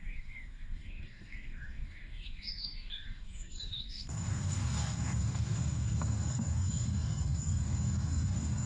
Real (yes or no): no